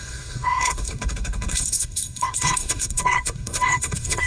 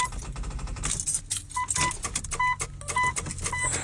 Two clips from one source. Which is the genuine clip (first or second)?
second